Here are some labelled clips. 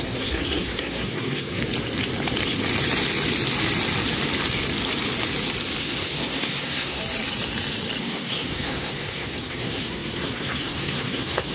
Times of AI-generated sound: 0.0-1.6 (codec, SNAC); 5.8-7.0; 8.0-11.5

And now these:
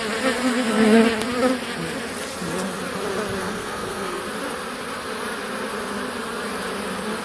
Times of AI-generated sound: 0.5-1.0 (codec, SNAC); 3.4-4.2

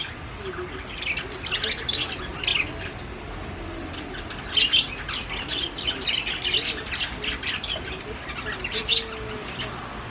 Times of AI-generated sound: none

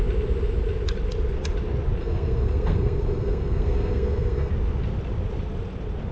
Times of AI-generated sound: 2.0-4.5 (codec, SNAC)

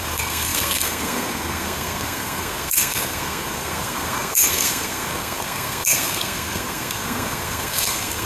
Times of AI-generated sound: 0.0-8.3 (codec, SNAC)

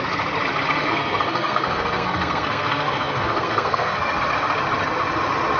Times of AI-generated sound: 0.8-4.2 (codec, SNAC)

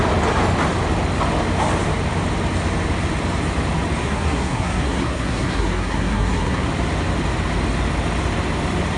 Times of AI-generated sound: 4.0-6.7 (codec, SNAC)